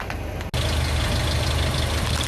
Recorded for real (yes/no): yes